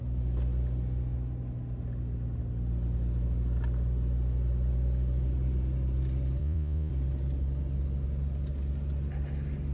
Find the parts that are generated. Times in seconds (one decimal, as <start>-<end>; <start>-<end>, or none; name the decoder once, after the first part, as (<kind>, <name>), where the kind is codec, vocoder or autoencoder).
6.4-6.9 (vocoder, Vocos)